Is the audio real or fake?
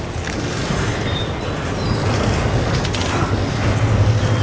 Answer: real